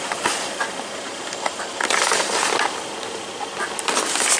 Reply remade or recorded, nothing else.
recorded